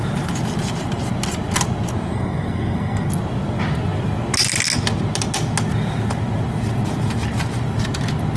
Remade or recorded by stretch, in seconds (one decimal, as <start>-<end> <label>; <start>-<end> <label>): 0.0-2.1 recorded; 2.1-3.1 remade; 3.1-8.4 recorded